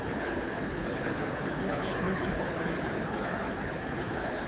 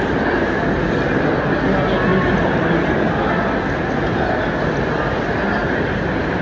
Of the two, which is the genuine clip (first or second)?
second